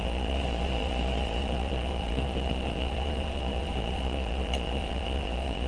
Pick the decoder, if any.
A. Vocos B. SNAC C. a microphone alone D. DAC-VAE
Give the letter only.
A